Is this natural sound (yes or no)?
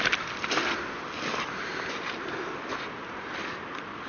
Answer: yes